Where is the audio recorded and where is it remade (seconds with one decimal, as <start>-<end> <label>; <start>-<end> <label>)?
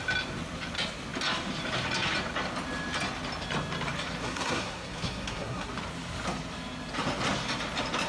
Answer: 0.0-4.2 recorded; 4.2-5.7 remade; 5.7-8.1 recorded